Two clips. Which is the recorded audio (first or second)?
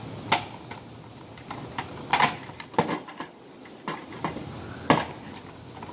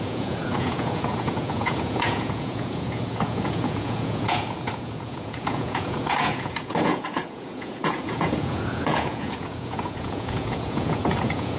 first